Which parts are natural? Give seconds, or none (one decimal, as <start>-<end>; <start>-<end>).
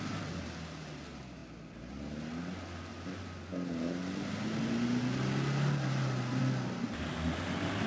0.0-7.9